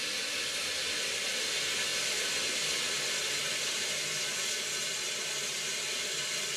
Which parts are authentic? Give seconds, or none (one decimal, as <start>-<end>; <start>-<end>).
none